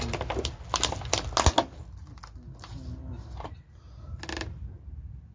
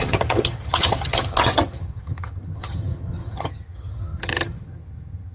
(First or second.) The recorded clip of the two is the first